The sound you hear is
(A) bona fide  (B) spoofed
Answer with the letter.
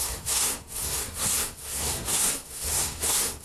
B